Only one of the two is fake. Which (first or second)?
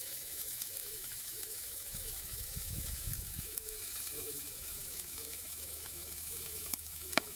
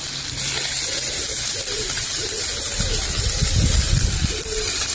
first